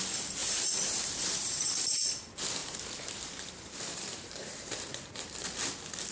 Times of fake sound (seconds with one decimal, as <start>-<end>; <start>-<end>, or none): 0.4-2.0; 2.6-5.1